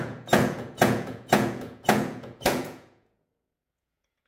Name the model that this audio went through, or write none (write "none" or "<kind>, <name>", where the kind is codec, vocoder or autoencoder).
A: vocoder, Vocos